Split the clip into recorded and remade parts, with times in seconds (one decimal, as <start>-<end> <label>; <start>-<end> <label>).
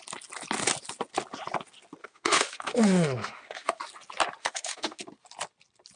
0.0-2.0 recorded; 2.0-3.8 remade; 3.8-4.4 recorded; 4.4-5.0 remade; 5.0-6.0 recorded